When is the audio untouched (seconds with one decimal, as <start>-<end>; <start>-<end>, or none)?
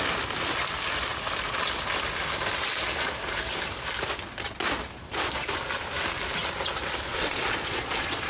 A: 0.0-7.1